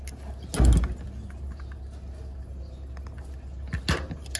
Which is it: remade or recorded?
recorded